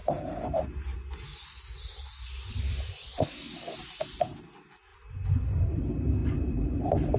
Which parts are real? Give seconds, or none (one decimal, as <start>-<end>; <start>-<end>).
0.6-4.9; 5.8-6.2; 6.8-7.2